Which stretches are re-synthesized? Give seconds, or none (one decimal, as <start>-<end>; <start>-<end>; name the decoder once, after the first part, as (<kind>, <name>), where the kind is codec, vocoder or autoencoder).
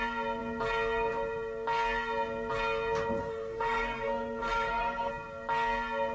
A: 3.2-5.1 (codec, SNAC)